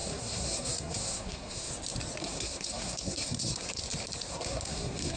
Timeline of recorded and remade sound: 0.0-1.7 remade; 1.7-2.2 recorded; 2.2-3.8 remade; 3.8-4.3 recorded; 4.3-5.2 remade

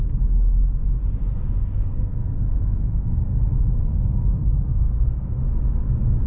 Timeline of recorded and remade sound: 0.0-1.6 recorded; 1.6-5.4 remade; 5.4-6.3 recorded

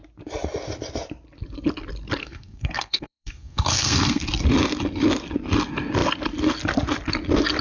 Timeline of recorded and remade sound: 0.0-2.2 recorded; 2.2-4.2 remade; 4.2-7.6 recorded

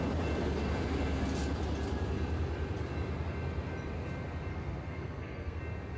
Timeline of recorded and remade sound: 0.0-4.5 recorded; 4.5-5.6 remade; 5.6-6.0 recorded

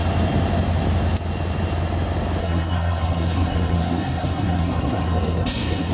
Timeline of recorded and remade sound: 0.0-2.4 recorded; 2.4-5.9 remade